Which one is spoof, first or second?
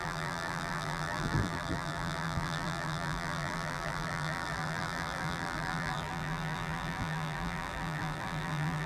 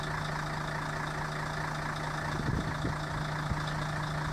first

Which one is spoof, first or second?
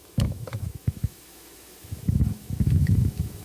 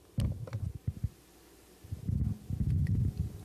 first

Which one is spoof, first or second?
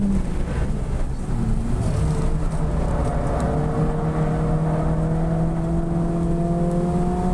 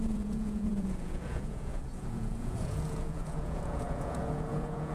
second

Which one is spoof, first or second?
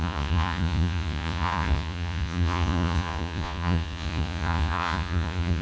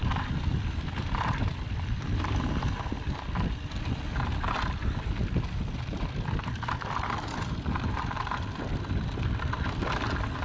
first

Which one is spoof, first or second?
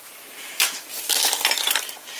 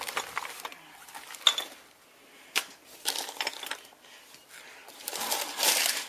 first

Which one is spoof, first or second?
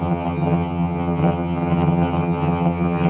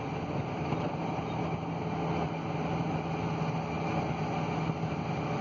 first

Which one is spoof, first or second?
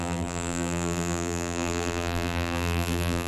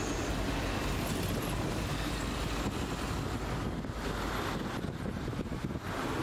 first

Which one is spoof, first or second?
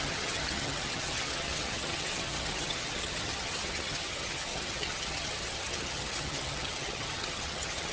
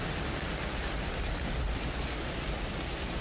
first